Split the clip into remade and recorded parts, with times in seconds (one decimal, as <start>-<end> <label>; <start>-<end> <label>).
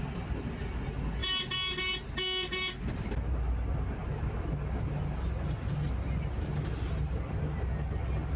0.0-8.4 recorded